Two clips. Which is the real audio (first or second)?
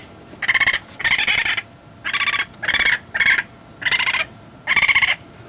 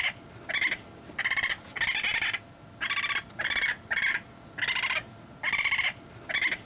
second